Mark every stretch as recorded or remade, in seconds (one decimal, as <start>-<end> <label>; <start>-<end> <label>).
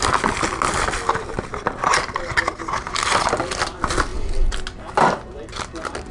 0.0-6.1 recorded